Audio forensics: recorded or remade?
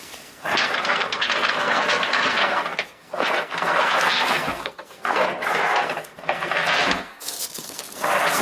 remade